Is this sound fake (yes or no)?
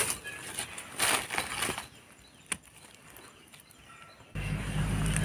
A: no